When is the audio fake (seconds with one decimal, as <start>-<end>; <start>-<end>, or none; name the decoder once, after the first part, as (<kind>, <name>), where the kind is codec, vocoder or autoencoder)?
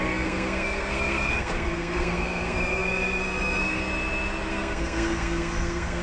0.0-3.8 (codec, SNAC); 4.5-6.0